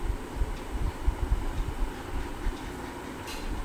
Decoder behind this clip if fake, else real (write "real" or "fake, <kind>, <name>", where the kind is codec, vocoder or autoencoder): real